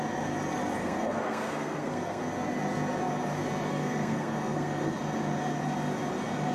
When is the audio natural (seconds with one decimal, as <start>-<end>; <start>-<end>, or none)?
0.0-0.8; 2.2-3.7; 5.0-6.5